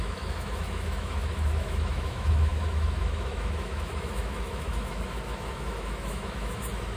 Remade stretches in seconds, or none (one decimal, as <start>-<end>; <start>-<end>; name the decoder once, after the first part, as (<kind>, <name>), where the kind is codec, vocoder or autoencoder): 0.0-7.0 (autoencoder, DAC-VAE)